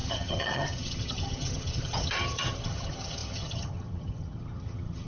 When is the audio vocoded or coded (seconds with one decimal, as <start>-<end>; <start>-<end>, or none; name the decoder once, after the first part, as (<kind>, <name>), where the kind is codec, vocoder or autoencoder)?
0.0-5.1 (vocoder, HiFi-GAN)